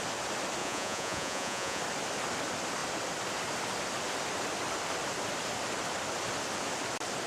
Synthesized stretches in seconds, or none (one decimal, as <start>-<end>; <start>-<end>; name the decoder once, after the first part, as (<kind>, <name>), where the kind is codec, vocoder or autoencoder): 0.6-1.8 (vocoder, Vocos)